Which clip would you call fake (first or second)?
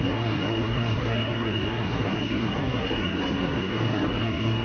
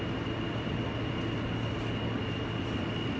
first